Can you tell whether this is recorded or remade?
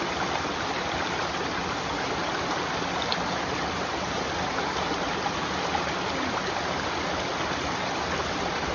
recorded